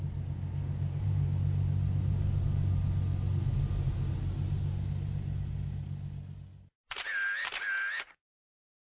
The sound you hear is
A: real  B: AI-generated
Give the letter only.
A